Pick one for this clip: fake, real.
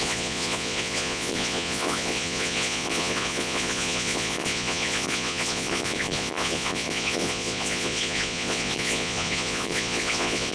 fake